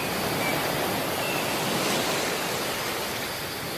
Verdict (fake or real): real